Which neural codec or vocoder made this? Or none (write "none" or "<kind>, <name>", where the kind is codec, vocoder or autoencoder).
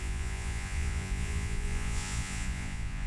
vocoder, Vocos